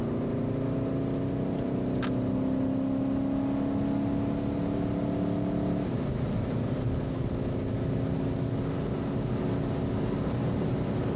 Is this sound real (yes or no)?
yes